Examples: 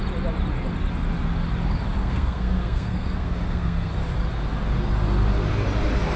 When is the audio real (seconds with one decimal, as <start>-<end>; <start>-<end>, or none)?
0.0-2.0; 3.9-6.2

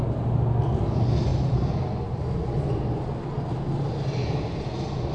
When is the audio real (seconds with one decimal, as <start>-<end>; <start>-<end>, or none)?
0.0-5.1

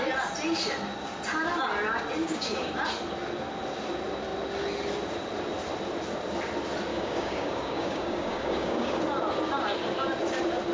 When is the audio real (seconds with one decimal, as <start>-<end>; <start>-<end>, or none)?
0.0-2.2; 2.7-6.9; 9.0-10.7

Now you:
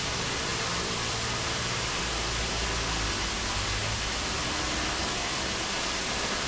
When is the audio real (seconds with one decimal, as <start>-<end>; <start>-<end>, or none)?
0.0-0.5; 2.0-6.5

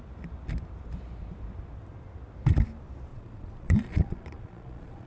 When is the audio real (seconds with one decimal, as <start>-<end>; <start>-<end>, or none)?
0.0-3.1

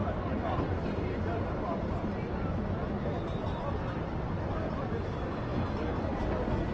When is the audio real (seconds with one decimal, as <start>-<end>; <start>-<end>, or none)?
0.0-6.7